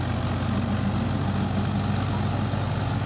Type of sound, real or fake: real